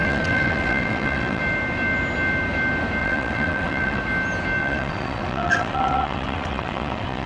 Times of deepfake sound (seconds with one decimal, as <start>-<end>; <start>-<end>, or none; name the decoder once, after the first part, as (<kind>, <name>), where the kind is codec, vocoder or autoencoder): 0.0-1.4 (vocoder, WaveNeXt); 3.0-4.0; 4.6-7.3